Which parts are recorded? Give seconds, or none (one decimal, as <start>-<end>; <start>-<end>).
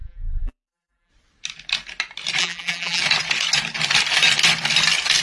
1.1-2.4; 3.0-5.2